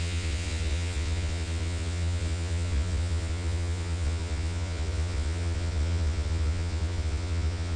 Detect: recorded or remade remade